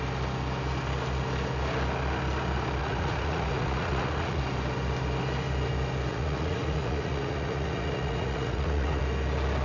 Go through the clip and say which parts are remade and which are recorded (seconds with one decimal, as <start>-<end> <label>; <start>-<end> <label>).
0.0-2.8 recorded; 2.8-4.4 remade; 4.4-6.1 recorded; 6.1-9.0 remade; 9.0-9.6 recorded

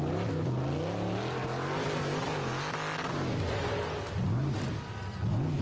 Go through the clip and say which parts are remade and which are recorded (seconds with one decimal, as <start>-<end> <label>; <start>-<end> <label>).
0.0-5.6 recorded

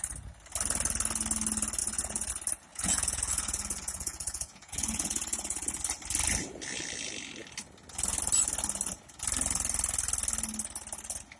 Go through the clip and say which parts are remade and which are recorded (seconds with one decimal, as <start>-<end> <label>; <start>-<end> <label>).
0.0-1.8 recorded; 1.8-2.3 remade; 2.3-2.7 recorded; 2.7-5.8 remade; 5.8-11.4 recorded

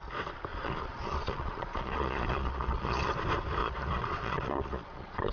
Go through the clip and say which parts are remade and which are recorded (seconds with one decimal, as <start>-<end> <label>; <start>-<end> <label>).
0.0-0.5 recorded; 0.5-3.1 remade; 3.1-3.6 recorded; 3.6-5.3 remade

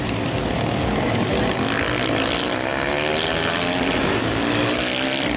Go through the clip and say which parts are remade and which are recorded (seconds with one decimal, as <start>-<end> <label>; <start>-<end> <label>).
0.0-5.4 recorded

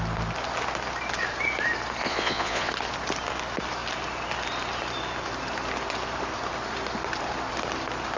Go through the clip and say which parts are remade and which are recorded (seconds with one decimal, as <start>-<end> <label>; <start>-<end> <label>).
0.0-2.0 recorded; 2.0-2.7 remade; 2.7-8.2 recorded